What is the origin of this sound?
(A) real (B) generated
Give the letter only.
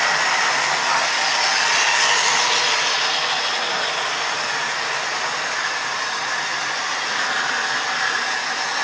A